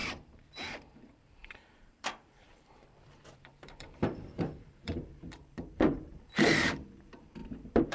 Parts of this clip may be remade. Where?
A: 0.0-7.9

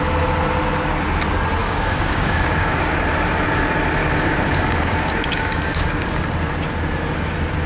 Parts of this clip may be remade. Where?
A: 1.6-2.9; 4.0-6.2

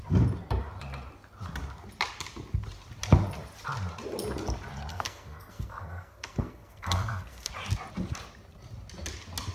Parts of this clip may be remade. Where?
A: 4.9-7.5

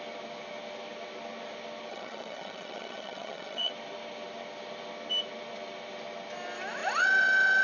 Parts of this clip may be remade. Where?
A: 1.9-3.7

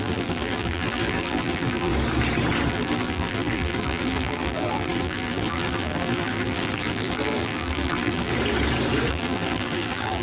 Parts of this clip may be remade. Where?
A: 0.0-1.9; 2.7-8.3; 9.1-10.2